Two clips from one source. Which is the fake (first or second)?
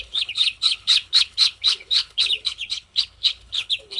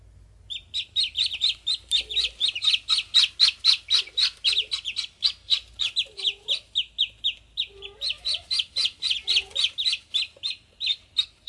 first